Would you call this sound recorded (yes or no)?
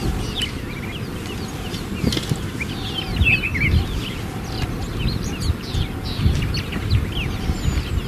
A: yes